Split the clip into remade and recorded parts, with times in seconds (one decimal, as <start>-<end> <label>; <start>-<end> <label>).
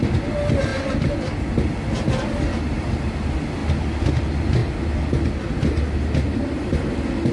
0.0-7.3 recorded